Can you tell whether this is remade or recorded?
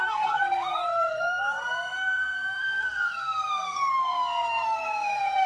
remade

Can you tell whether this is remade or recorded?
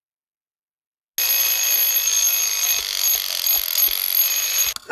recorded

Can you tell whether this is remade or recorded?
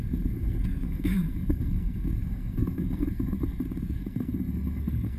remade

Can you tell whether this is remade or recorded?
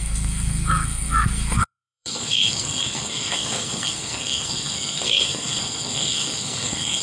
remade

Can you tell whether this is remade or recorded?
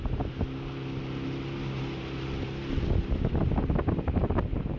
recorded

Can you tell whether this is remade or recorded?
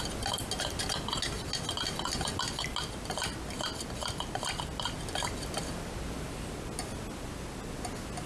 recorded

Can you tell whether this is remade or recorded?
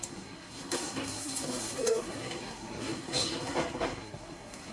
remade